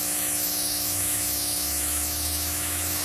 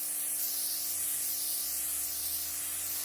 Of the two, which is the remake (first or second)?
first